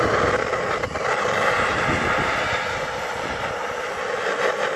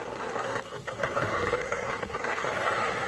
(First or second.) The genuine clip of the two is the first